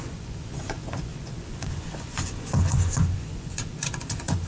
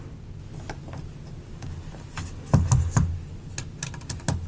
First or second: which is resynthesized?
first